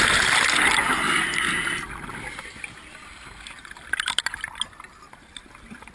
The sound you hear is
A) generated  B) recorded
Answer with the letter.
B